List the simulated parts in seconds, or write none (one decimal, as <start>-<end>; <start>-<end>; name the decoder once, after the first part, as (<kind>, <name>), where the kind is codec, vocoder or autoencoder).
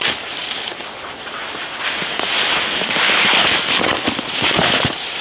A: none